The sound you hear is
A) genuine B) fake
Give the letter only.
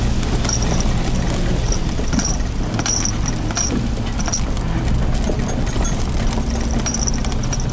A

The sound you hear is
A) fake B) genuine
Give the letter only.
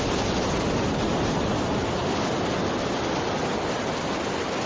B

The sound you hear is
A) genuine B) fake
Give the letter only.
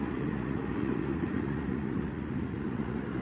B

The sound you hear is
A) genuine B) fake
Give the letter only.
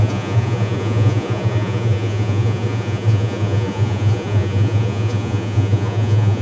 B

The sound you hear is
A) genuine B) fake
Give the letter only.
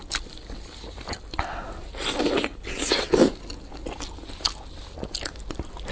A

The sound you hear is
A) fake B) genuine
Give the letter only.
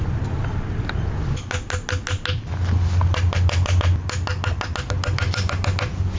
B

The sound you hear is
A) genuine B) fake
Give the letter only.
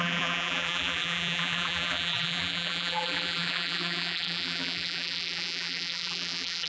B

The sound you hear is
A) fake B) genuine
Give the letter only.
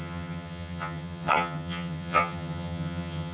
A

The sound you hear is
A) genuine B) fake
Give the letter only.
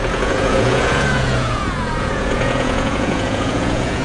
B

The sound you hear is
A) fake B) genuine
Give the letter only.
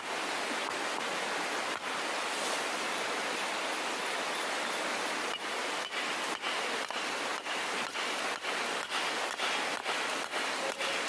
B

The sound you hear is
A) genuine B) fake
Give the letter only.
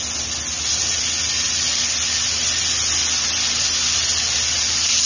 A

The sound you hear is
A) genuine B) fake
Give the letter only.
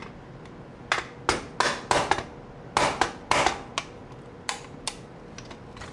A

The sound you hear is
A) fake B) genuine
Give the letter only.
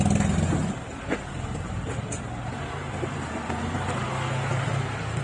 B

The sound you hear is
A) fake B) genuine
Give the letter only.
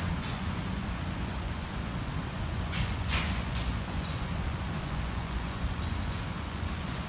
A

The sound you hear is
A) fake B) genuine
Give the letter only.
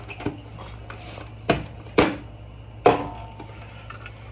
B